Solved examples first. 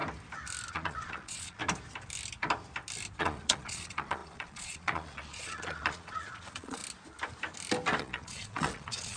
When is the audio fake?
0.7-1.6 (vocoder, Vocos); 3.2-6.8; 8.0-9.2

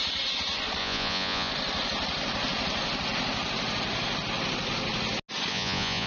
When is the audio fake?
0.8-1.5 (vocoder, Vocos); 5.5-6.1

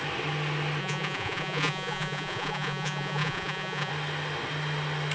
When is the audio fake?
0.8-3.9 (vocoder, Vocos)